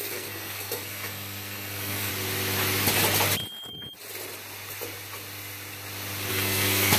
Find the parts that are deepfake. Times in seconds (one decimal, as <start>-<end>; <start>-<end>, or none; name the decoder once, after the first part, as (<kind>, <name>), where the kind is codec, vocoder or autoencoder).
0.0-2.1 (codec, SNAC); 6.3-7.0